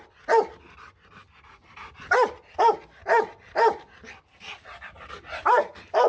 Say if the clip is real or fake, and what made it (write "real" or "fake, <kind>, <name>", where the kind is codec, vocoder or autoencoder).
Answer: real